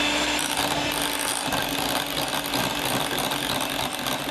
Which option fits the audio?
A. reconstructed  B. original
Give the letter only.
B